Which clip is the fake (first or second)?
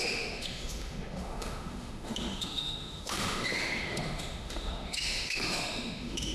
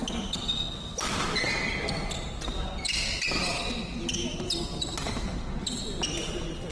first